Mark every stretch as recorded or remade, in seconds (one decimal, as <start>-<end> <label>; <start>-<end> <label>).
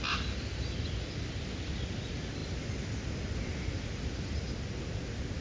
0.0-5.4 recorded